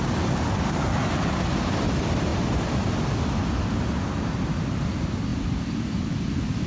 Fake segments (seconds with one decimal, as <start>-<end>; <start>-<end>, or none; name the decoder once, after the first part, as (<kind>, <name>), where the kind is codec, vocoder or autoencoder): none